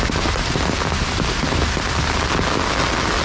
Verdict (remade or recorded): recorded